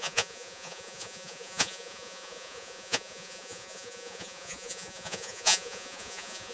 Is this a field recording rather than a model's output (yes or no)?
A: no